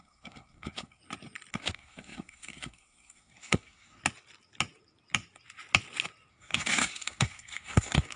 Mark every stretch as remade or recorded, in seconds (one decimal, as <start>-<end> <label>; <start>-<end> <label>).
0.0-1.0 remade; 1.0-1.5 recorded; 1.5-4.0 remade; 4.0-6.3 recorded; 6.3-8.2 remade